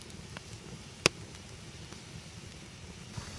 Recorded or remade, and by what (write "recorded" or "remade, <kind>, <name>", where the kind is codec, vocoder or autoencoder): recorded